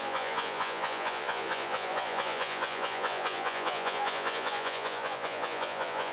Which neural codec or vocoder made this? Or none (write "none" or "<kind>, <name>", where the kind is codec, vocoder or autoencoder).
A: vocoder, Vocos